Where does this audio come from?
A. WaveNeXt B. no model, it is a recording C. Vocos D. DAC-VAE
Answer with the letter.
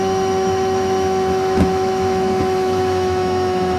D